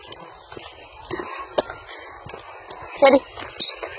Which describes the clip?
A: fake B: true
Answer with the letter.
B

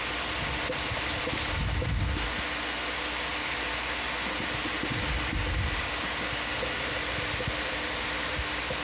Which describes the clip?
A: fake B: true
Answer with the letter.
B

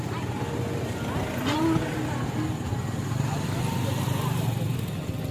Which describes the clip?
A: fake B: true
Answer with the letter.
B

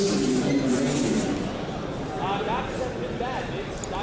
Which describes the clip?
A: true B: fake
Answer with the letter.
A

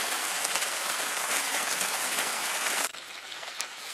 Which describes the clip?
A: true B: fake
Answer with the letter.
B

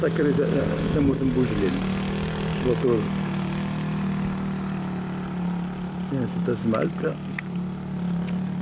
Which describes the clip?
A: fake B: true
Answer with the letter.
B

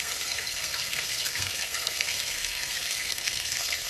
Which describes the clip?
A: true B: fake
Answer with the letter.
B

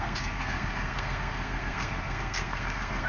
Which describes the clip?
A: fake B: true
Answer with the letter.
A